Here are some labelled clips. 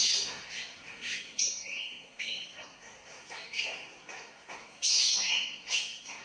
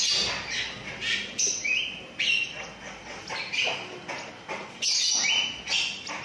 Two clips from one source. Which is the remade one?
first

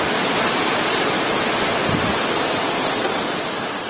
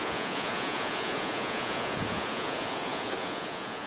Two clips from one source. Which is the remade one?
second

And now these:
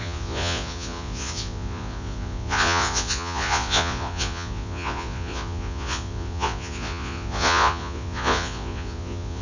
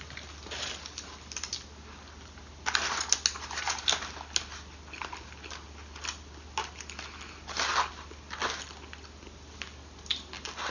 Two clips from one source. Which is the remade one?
first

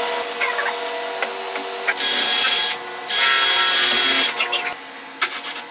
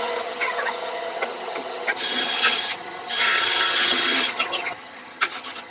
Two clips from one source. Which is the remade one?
second